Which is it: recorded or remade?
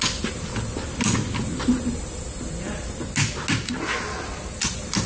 recorded